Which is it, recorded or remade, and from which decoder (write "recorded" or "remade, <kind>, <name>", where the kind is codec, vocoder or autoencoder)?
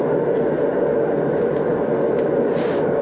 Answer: recorded